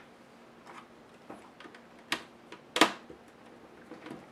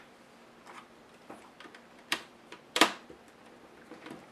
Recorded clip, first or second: first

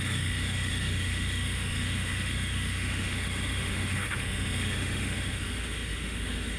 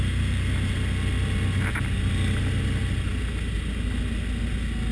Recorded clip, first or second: second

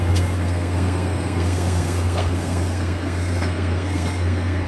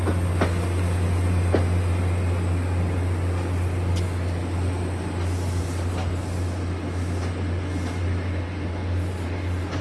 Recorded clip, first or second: second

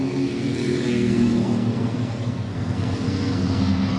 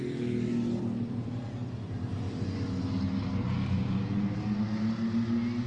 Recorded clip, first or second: second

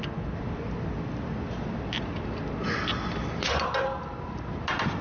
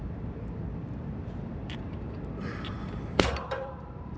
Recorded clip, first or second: first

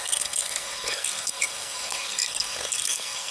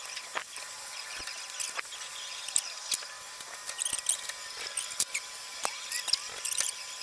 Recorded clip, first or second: second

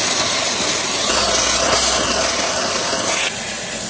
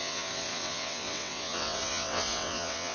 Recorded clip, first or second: first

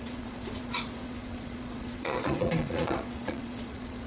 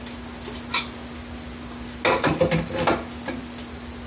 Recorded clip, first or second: second